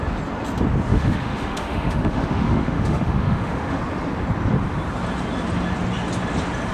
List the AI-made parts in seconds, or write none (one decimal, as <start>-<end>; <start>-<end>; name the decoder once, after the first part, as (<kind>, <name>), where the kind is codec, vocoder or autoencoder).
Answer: 0.9-3.8 (autoencoder, DAC-VAE)